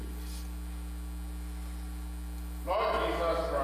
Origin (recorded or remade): recorded